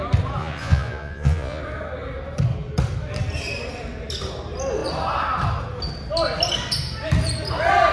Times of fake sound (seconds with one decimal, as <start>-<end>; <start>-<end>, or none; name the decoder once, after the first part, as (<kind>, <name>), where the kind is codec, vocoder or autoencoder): 0.4-1.6 (vocoder, Vocos)